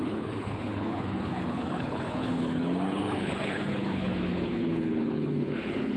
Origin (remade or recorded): remade